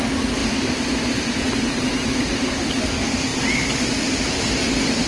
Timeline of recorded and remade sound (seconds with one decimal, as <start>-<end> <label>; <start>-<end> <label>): 0.0-0.4 recorded; 0.4-2.8 remade; 2.8-3.3 recorded; 3.3-4.5 remade; 4.5-5.1 recorded